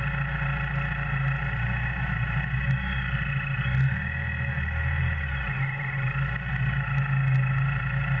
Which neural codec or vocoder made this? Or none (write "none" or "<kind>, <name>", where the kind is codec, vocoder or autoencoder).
none